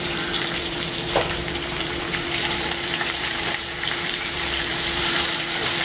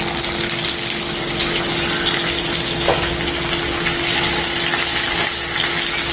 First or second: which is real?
second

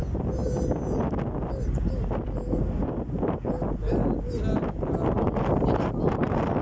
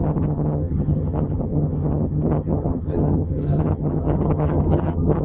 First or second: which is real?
first